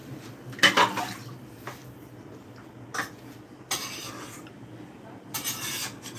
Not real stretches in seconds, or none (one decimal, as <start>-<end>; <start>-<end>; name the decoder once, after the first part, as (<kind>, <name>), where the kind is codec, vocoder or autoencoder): none